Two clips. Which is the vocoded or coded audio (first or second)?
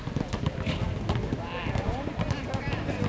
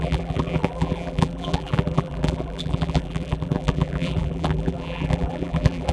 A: second